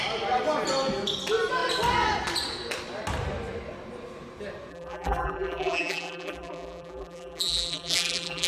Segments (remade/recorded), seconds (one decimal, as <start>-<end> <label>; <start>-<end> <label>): 0.0-4.7 recorded; 4.7-8.5 remade

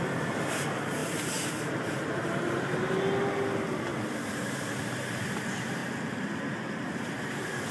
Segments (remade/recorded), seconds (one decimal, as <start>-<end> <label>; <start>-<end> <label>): 0.0-1.0 recorded; 1.0-2.6 remade; 2.6-7.7 recorded

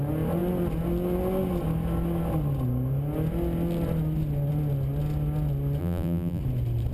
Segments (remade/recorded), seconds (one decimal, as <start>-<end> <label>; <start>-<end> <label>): 0.0-5.8 recorded; 5.8-6.4 remade; 6.4-6.9 recorded

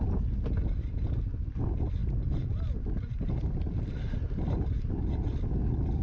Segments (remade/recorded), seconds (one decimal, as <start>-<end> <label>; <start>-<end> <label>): 0.0-6.0 recorded